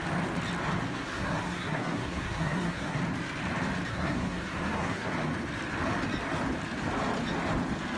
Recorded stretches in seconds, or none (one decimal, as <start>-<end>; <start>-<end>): 0.0-0.9; 3.0-3.9; 5.1-8.0